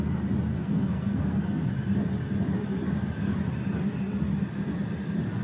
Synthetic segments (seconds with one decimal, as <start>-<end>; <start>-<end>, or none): 0.5-1.7